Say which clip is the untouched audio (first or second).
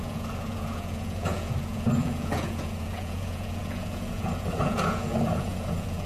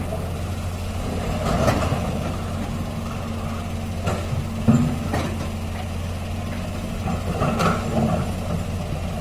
second